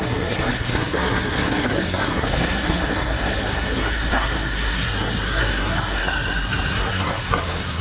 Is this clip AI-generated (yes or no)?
yes